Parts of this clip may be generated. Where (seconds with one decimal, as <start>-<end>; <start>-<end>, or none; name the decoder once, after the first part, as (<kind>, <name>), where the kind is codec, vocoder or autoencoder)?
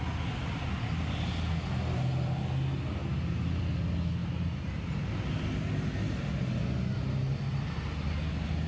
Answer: none